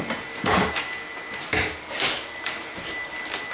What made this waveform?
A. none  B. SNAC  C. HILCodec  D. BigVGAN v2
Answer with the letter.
A